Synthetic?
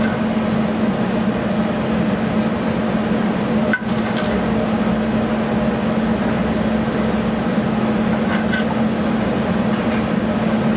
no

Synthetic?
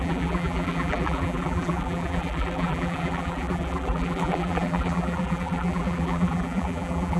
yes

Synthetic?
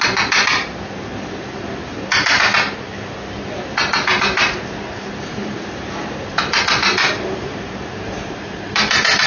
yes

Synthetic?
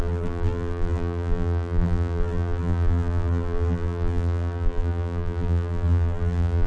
yes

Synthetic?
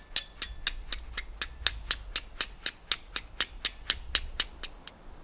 no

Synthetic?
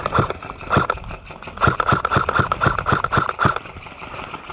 no